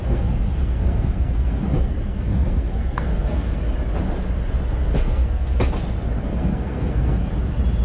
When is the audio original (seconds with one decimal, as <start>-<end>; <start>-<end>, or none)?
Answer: 3.6-4.9; 5.6-6.2; 7.3-7.8